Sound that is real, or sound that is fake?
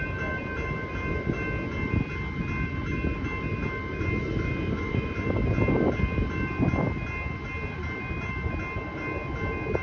real